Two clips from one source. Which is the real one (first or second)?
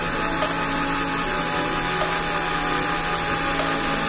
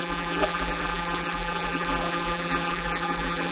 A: first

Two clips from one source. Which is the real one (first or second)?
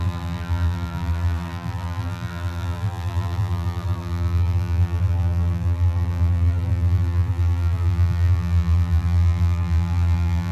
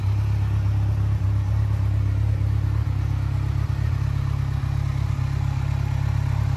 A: second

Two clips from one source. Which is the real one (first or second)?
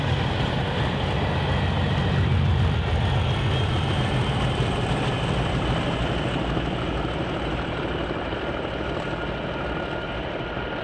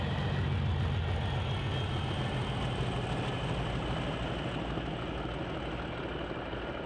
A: second